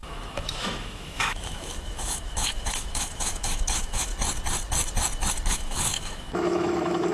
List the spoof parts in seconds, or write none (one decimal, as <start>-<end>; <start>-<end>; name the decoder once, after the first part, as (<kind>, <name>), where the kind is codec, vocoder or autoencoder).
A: 0.0-4.1 (autoencoder, DAC-VAE); 5.5-7.1